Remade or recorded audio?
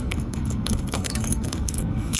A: remade